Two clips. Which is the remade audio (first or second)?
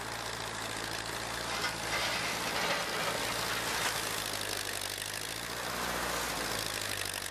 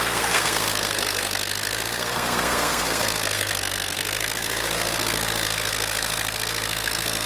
second